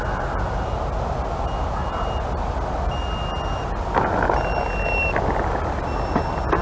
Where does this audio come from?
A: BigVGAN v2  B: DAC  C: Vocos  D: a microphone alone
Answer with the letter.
D